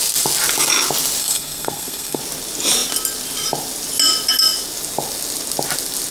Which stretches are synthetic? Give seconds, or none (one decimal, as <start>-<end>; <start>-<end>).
1.2-2.2

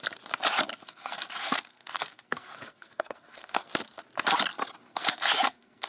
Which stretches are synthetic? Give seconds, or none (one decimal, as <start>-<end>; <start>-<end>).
0.7-4.0; 4.9-5.9

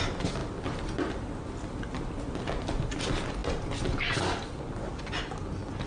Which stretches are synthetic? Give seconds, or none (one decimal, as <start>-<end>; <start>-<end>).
none

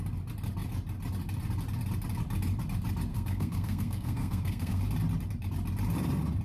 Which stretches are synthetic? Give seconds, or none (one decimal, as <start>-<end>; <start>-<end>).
3.1-4.8